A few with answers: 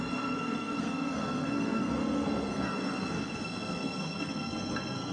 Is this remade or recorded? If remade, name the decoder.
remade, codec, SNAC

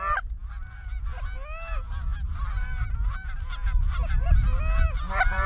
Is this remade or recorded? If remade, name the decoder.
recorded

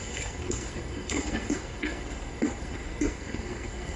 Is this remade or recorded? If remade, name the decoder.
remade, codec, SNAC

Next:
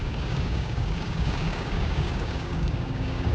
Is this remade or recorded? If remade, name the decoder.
remade, codec, DAC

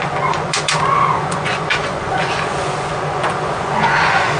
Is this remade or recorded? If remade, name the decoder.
remade, vocoder, Vocos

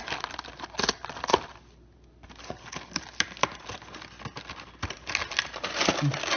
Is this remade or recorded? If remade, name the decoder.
recorded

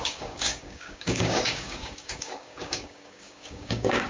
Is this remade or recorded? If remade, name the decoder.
remade, codec, DAC